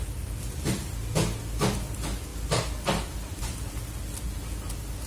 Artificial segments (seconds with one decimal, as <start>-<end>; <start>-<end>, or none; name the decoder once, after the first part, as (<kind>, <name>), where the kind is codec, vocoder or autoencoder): none